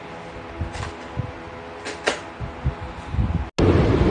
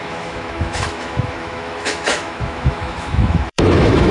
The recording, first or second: first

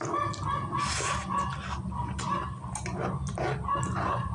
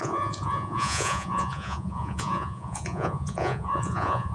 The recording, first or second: first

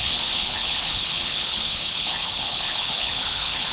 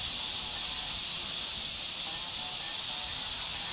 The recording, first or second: second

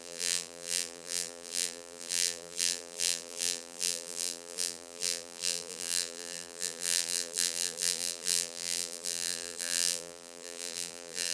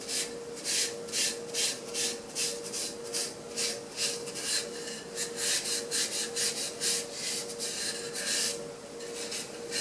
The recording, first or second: second